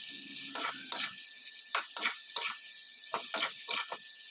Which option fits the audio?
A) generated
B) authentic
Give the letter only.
B